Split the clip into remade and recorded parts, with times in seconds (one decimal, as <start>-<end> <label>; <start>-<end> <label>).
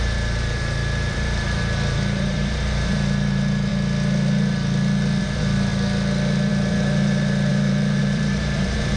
0.0-3.7 remade; 3.7-5.2 recorded; 5.2-5.7 remade; 5.7-6.5 recorded; 6.5-9.0 remade